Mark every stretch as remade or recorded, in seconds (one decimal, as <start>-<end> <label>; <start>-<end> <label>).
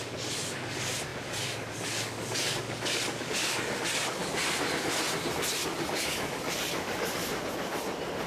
0.0-4.2 remade; 4.2-5.9 recorded; 5.9-7.2 remade; 7.2-8.3 recorded